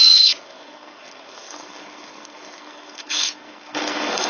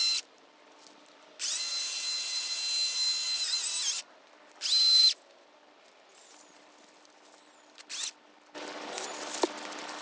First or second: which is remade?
first